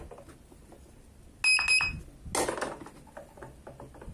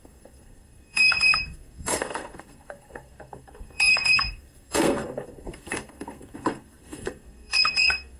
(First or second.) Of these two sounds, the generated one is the second